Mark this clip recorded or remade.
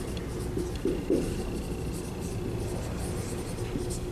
recorded